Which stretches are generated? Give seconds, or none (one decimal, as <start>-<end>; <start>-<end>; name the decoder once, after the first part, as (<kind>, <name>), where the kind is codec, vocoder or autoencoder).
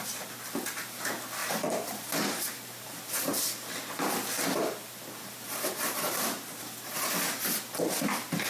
1.4-3.0 (vocoder, BigVGAN v2); 5.2-6.6